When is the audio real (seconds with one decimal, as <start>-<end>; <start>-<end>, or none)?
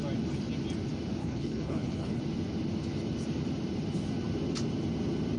0.0-1.2; 2.2-5.4